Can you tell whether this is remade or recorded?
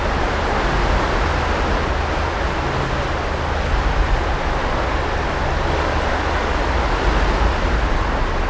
recorded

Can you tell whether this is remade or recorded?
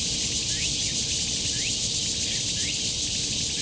recorded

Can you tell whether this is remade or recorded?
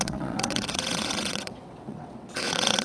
remade